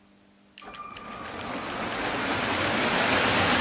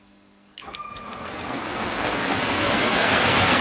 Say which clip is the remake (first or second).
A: second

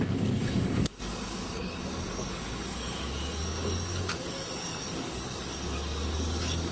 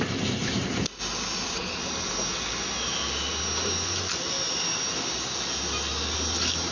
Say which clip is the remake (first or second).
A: first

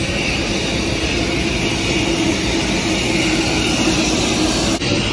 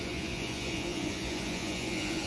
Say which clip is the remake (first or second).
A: second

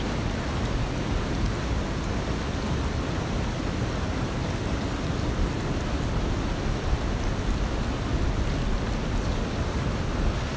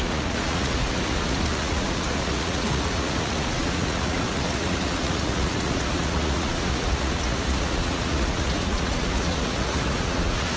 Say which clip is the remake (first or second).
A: second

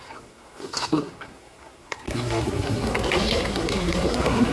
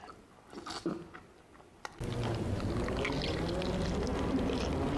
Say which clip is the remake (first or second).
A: first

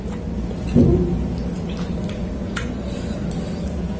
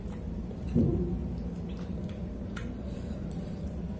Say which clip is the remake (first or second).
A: second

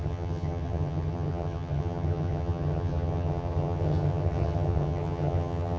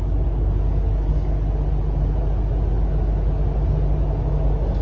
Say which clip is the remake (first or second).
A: first